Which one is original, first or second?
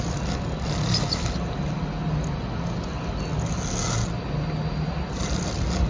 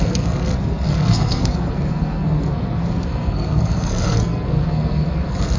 first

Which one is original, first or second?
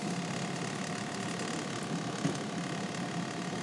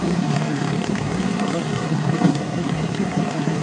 first